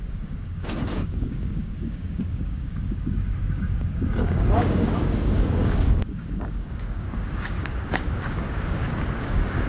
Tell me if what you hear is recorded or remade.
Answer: remade